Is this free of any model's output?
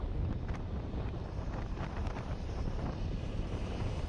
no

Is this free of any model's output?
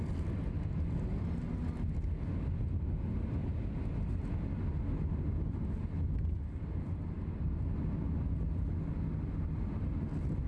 yes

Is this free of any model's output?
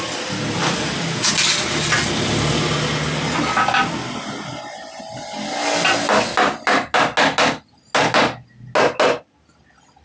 yes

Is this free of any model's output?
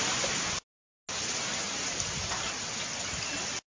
yes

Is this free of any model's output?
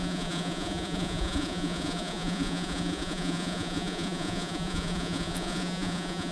no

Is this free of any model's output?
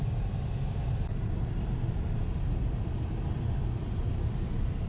yes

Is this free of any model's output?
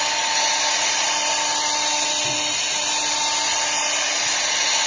yes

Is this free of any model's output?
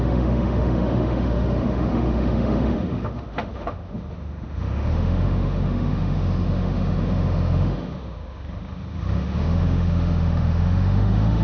no